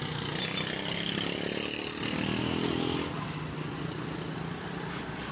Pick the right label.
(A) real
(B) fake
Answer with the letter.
A